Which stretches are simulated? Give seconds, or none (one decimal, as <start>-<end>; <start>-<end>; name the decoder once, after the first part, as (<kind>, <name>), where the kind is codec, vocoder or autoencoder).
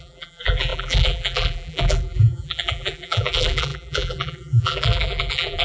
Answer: 0.0-5.6 (vocoder, BigVGAN v2)